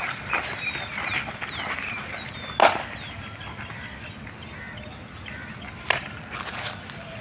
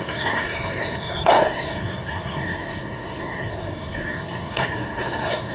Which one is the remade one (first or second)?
second